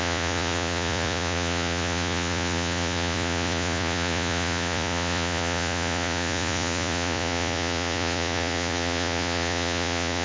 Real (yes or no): no